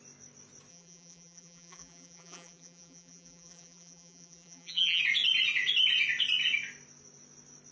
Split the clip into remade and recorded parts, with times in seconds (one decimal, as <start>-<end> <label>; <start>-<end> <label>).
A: 0.0-0.7 recorded; 0.7-5.0 remade; 5.0-7.7 recorded

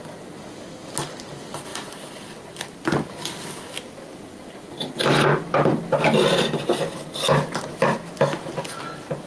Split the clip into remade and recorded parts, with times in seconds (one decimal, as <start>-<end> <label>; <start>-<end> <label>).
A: 0.0-1.7 recorded; 1.7-4.6 remade; 4.6-5.7 recorded; 5.7-7.8 remade; 7.8-9.3 recorded

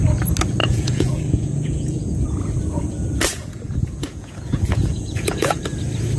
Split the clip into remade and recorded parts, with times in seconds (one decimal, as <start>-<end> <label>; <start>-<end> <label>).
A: 0.0-0.6 recorded; 0.6-2.0 remade; 2.0-3.3 recorded; 3.3-5.6 remade; 5.6-6.2 recorded

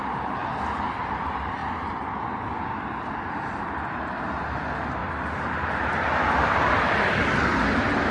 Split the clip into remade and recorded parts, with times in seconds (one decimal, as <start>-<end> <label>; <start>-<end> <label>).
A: 0.0-8.1 recorded